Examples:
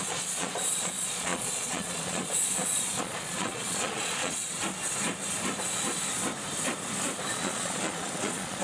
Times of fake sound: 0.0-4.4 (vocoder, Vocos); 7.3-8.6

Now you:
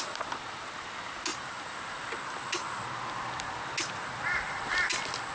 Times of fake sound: none

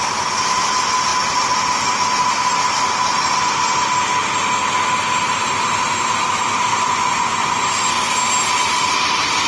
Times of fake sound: 6.7-8.1 (vocoder, Vocos)

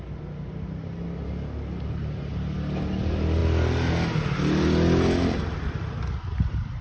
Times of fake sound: none

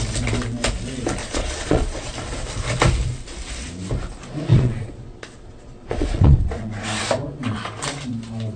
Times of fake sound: 1.2-2.1 (vocoder, Vocos); 4.5-6.7

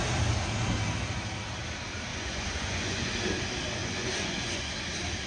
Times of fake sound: 2.1-3.1 (vocoder, Vocos); 3.8-4.7

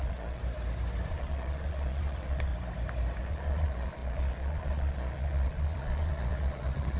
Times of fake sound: 0.0-0.4 (vocoder, Vocos); 1.1-2.5; 3.2-7.0

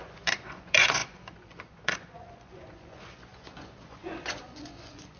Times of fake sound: 0.0-5.2 (vocoder, Vocos)